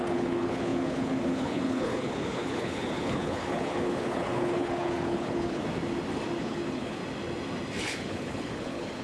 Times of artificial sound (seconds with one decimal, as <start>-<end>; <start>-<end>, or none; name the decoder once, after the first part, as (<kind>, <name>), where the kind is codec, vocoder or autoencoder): 0.0-5.6 (codec, HILCodec); 6.4-7.0; 7.8-9.0